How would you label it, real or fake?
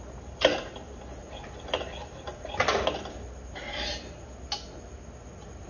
real